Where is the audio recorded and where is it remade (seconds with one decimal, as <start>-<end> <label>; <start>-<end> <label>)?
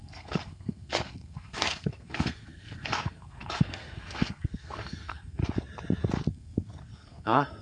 0.0-5.4 remade; 5.4-6.3 recorded; 6.3-7.6 remade